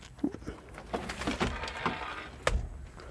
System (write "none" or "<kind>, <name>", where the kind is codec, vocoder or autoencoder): none